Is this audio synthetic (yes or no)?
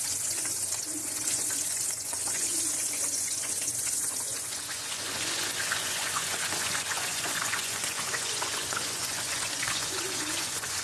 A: yes